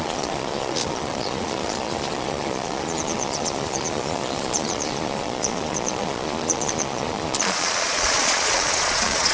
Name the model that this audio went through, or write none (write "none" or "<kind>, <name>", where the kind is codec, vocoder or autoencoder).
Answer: vocoder, Vocos